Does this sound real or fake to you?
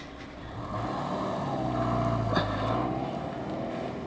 real